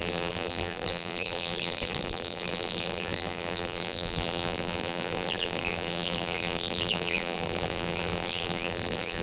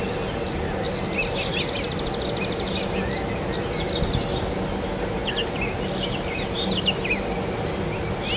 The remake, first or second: first